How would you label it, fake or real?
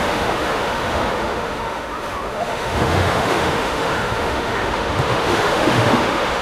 fake